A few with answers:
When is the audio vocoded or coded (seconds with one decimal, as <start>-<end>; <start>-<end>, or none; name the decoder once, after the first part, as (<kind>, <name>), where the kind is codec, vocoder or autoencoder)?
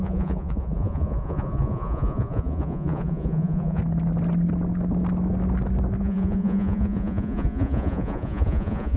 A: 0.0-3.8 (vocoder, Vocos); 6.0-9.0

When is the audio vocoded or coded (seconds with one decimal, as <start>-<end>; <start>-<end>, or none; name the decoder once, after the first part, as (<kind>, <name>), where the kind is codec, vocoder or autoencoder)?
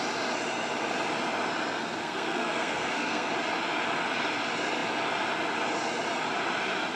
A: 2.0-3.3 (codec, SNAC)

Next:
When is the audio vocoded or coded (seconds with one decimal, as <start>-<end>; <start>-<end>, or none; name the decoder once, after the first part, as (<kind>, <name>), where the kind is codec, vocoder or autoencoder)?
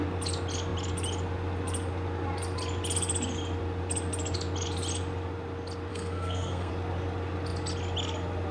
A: 5.9-6.7 (codec, SNAC)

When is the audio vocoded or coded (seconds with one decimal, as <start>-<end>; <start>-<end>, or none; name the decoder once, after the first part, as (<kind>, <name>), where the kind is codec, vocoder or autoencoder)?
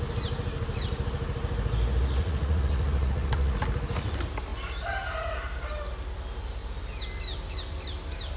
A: 2.2-3.6 (vocoder, Vocos)